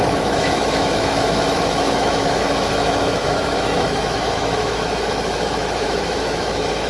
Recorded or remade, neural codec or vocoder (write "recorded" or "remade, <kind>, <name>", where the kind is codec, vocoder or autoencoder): remade, autoencoder, DAC-VAE